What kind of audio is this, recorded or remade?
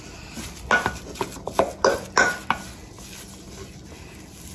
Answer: recorded